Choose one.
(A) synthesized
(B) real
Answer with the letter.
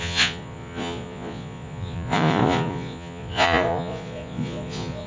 A